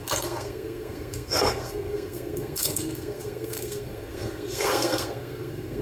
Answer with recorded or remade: remade